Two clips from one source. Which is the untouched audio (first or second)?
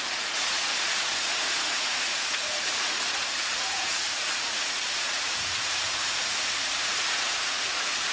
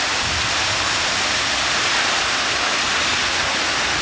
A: second